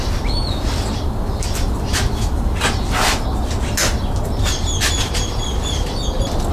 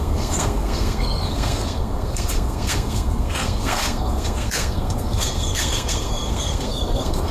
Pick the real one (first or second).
first